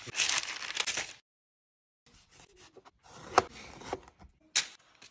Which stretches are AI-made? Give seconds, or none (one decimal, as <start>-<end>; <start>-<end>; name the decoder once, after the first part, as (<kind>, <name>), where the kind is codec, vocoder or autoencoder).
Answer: none